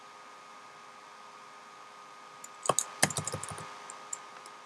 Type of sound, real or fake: real